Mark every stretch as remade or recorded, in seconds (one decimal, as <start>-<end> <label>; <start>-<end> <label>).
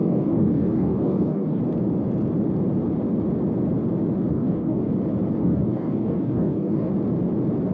0.0-1.6 remade; 1.6-4.3 recorded; 4.3-4.9 remade; 4.9-5.4 recorded; 5.4-6.9 remade; 6.9-7.7 recorded